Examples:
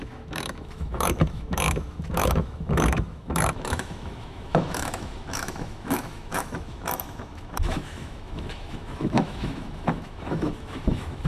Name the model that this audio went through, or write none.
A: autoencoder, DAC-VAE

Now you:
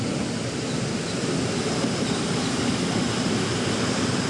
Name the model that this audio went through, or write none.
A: none